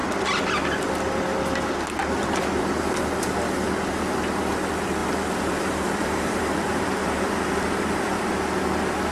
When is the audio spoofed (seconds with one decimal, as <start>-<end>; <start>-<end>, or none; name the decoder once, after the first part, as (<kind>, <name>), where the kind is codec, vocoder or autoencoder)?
2.0-2.6 (vocoder, BigVGAN v2); 5.0-8.2